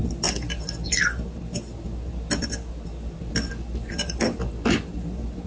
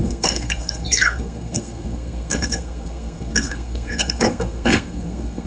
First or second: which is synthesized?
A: second